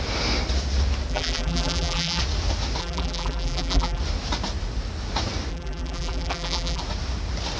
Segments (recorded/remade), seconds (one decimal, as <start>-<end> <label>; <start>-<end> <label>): 0.0-1.1 recorded; 1.1-2.2 remade; 2.2-2.8 recorded; 2.8-4.0 remade; 4.0-5.5 recorded; 5.5-6.8 remade; 6.8-7.6 recorded